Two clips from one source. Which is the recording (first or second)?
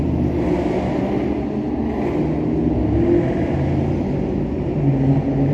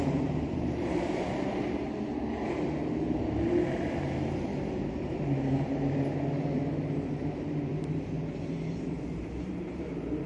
first